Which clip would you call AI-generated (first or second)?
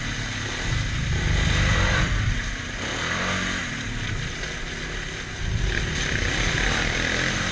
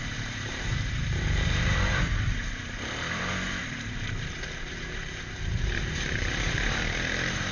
second